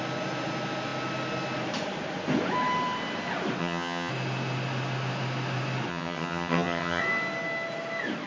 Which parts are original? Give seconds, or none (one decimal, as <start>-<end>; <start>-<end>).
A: 0.0-3.6; 4.1-5.9; 7.0-8.3